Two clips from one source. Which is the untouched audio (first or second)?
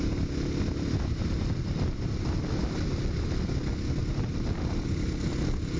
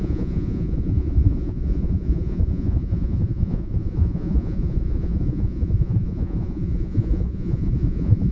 first